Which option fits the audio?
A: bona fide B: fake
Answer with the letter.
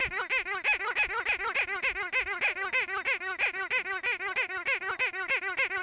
A